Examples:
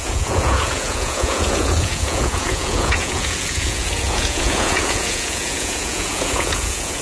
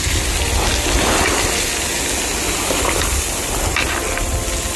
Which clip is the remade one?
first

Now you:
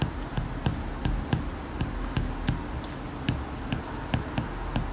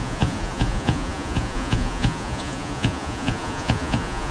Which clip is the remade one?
second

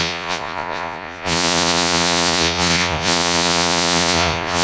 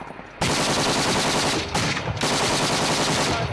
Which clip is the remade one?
first